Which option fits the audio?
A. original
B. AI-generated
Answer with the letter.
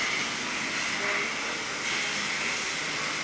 A